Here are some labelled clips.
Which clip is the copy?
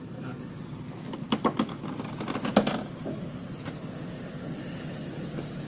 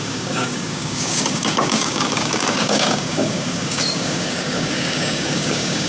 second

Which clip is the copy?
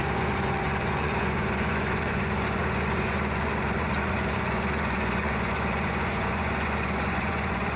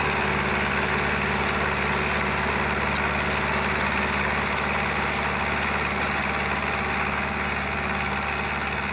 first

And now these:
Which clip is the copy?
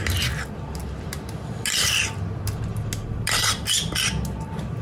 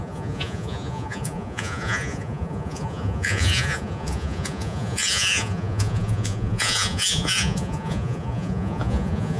second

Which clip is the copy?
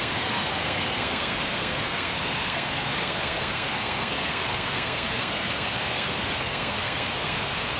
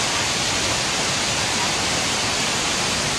first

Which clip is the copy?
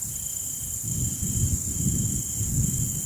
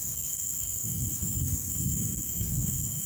second